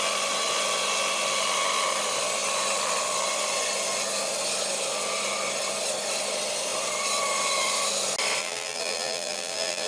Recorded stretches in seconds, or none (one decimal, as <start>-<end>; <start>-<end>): 0.0-8.4